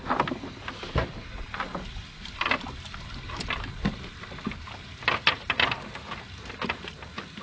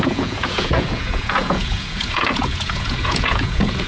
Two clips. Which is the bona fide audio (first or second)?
first